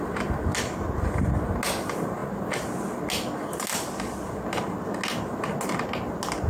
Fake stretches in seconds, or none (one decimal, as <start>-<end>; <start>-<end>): none